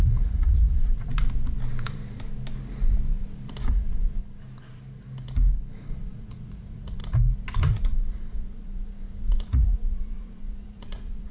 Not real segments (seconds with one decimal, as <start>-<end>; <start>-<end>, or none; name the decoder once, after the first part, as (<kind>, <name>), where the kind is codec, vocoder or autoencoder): 0.0-1.1 (vocoder, Vocos); 3.7-4.2; 5.9-7.0; 7.6-11.3